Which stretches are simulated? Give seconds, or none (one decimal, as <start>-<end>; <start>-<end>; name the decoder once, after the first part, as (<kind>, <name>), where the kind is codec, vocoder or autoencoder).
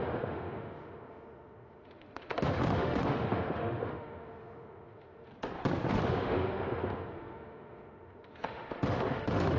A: 0.0-5.3 (autoencoder, DAC-VAE); 5.9-9.6